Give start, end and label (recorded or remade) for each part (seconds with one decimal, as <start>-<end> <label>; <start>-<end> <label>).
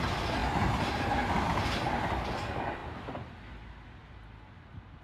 0.0-5.0 recorded